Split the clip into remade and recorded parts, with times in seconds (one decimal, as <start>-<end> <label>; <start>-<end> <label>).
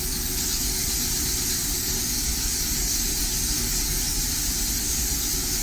0.0-0.8 remade; 0.8-1.6 recorded; 1.6-4.2 remade; 4.2-4.7 recorded; 4.7-5.6 remade